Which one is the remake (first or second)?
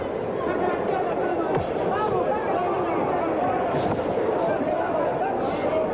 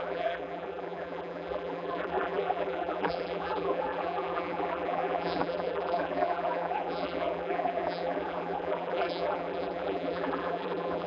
second